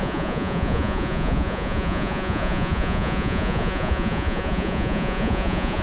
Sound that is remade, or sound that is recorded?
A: remade